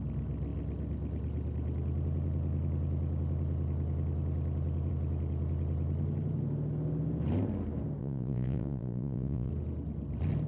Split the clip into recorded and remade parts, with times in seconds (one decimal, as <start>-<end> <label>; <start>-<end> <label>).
0.0-8.0 recorded; 8.0-9.5 remade; 9.5-10.5 recorded